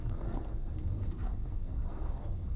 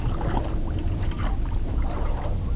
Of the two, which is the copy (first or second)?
first